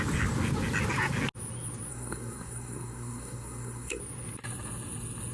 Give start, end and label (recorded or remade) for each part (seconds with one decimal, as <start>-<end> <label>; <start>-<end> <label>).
0.0-1.9 recorded; 1.9-4.0 remade; 4.0-5.3 recorded